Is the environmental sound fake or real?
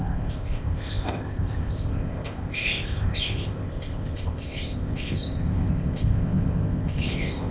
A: fake